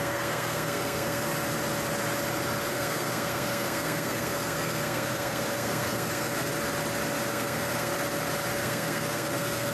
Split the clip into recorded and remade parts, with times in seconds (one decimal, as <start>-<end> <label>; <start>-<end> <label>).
0.0-1.3 remade; 1.3-2.7 recorded; 2.7-6.5 remade; 6.5-7.3 recorded; 7.3-7.9 remade; 7.9-8.5 recorded; 8.5-9.7 remade